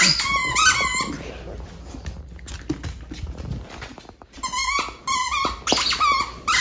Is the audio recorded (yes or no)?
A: yes